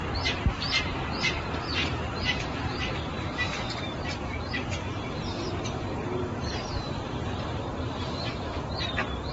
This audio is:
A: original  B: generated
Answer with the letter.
B